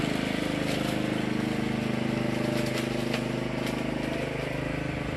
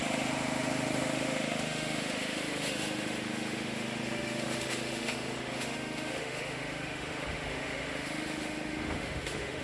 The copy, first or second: second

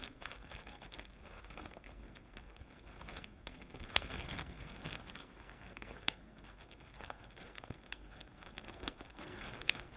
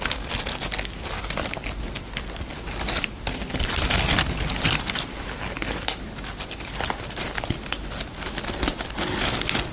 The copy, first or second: first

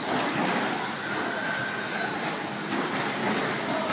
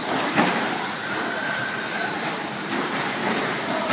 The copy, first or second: second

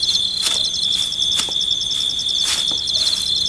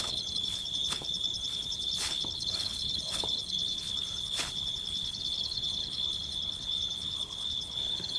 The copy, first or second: second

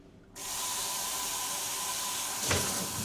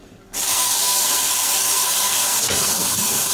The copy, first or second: second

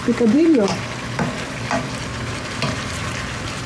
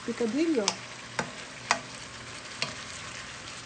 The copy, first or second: first